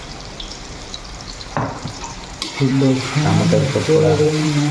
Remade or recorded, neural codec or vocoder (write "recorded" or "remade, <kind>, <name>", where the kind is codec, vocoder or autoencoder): remade, vocoder, BigVGAN v2